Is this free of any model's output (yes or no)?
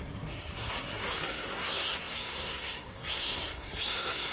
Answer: no